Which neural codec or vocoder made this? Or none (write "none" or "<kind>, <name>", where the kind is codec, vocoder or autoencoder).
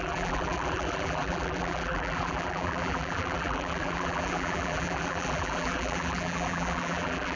vocoder, BigVGAN v2